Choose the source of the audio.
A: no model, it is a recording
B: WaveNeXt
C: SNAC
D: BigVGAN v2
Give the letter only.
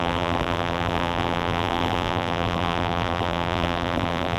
D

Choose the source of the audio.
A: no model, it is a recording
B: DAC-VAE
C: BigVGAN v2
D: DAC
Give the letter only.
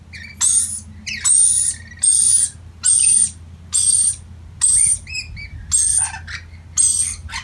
A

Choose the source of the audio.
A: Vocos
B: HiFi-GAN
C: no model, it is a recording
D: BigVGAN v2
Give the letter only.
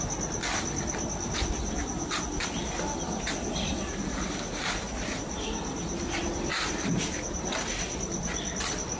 C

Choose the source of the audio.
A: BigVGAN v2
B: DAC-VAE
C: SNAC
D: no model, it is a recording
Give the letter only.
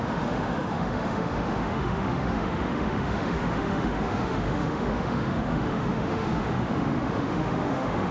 B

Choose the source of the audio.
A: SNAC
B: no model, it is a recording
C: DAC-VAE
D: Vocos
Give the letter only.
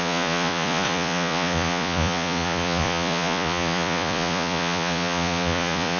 D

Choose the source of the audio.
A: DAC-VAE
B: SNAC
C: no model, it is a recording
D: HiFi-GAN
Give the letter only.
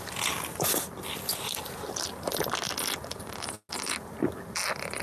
C